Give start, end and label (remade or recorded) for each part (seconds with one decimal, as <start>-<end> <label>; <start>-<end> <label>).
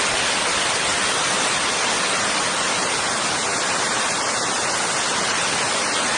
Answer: 0.0-6.2 recorded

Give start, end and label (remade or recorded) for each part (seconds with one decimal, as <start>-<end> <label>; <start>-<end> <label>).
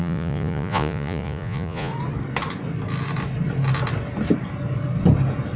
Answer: 0.0-1.9 remade; 1.9-5.6 recorded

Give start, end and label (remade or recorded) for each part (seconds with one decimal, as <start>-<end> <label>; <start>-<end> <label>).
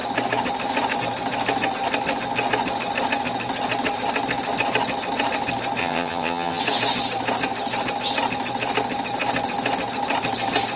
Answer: 0.0-5.8 recorded; 5.8-6.6 remade; 6.6-10.8 recorded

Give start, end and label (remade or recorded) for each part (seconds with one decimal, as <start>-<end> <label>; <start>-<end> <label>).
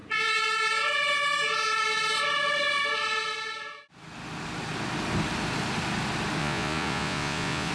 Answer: 0.0-6.4 recorded; 6.4-7.7 remade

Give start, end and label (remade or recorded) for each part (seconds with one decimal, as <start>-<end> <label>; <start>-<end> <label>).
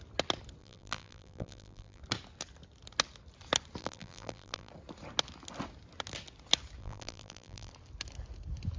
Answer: 0.0-0.6 recorded; 0.6-2.0 remade; 2.0-3.8 recorded; 3.8-4.7 remade; 4.7-6.8 recorded; 6.8-7.7 remade; 7.7-8.8 recorded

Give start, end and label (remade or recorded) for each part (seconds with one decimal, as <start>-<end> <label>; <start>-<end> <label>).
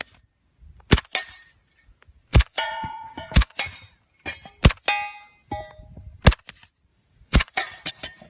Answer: 0.0-2.3 recorded; 2.3-4.0 remade; 4.0-6.9 recorded; 6.9-7.9 remade; 7.9-8.3 recorded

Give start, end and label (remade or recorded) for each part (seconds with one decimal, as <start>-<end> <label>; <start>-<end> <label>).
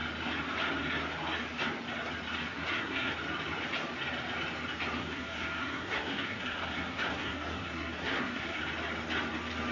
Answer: 0.0-2.5 recorded; 2.5-3.1 remade; 3.1-5.0 recorded; 5.0-8.6 remade; 8.6-9.7 recorded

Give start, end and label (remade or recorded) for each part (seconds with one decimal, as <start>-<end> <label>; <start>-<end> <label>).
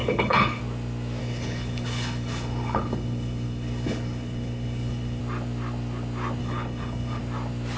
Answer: 0.0-0.6 remade; 0.6-1.2 recorded; 1.2-5.2 remade; 5.2-6.4 recorded; 6.4-7.2 remade; 7.2-7.8 recorded